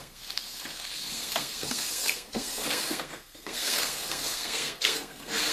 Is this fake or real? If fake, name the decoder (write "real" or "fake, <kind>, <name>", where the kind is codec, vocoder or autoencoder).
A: fake, codec, SNAC